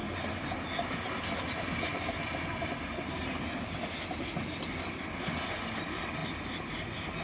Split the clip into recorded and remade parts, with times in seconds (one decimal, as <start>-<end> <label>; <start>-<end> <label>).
0.0-7.2 recorded